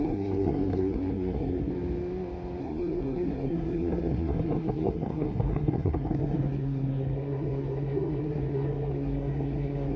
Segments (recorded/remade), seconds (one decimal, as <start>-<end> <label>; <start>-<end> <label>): 0.0-1.7 remade; 1.7-2.6 recorded; 2.6-10.0 remade